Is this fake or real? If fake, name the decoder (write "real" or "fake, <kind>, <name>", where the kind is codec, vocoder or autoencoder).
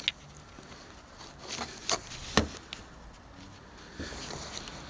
real